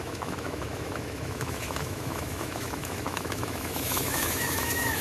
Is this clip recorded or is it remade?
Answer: remade